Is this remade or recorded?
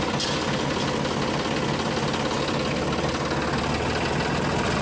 recorded